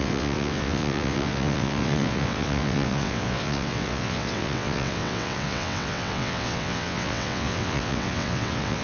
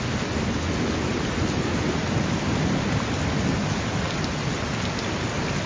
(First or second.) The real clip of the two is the second